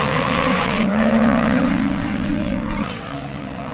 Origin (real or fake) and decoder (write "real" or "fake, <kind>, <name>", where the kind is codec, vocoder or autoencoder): fake, vocoder, WaveNeXt